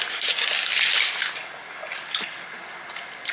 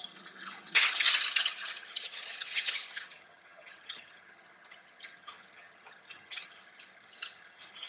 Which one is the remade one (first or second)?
second